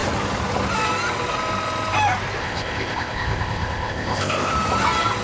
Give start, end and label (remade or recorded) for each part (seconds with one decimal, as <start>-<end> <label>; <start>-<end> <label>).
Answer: 0.0-2.4 recorded; 2.4-4.5 remade; 4.5-5.2 recorded